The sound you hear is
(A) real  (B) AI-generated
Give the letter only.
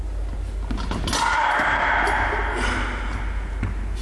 A